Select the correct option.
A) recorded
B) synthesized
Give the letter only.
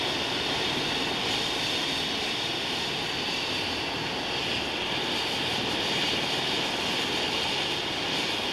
A